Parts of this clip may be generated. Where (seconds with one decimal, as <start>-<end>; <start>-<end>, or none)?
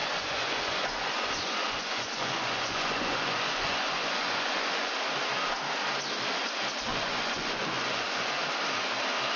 0.0-4.9; 6.9-8.4